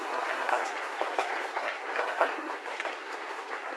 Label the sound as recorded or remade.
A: remade